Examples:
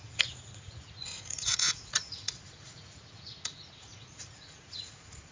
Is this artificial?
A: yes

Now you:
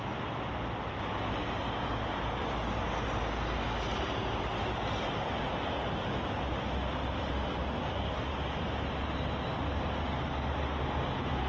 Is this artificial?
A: no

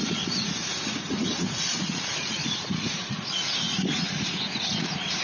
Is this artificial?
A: yes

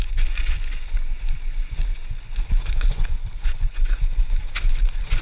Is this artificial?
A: yes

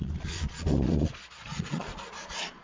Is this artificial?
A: yes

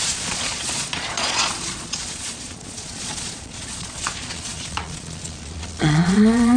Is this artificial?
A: yes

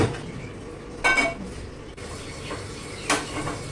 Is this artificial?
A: no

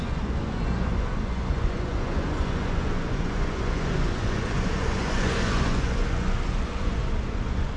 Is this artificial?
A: yes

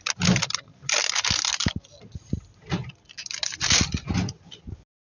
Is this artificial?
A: no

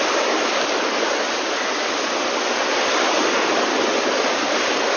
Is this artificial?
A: no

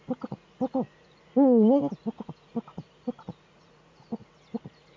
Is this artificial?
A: yes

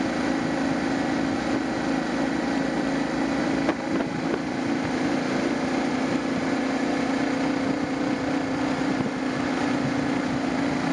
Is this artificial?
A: no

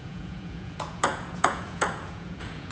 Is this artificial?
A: yes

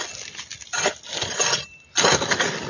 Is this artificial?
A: no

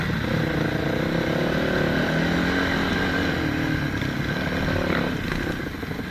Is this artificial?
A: no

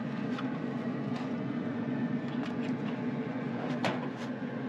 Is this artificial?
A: yes